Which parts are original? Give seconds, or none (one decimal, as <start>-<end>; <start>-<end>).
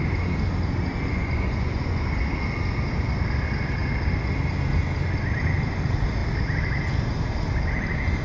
0.0-1.1; 2.1-8.2